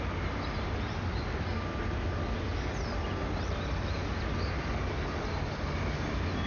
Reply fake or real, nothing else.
real